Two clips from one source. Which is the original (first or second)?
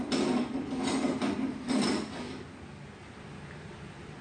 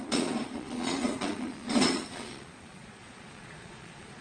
first